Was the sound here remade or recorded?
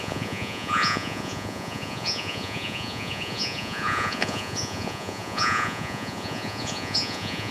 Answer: remade